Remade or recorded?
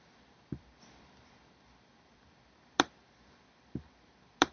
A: remade